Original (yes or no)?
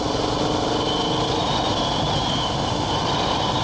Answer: yes